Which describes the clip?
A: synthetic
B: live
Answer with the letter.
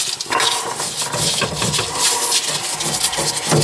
B